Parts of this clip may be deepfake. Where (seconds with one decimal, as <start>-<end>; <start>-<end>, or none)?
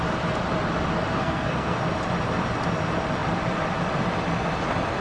1.2-1.8